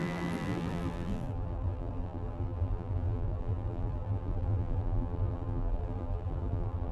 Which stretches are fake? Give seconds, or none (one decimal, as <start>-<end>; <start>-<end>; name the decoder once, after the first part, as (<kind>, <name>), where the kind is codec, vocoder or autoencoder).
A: 0.0-6.9 (vocoder, BigVGAN v2)